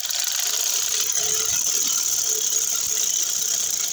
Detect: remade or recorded recorded